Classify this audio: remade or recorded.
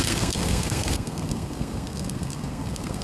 remade